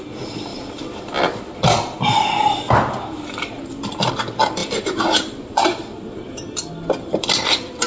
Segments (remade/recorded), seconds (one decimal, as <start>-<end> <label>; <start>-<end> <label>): 0.0-0.5 recorded; 0.5-4.1 remade; 4.1-4.6 recorded; 4.6-6.7 remade; 6.7-7.9 recorded